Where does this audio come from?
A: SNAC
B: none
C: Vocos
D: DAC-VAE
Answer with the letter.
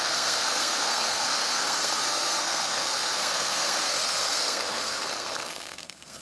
A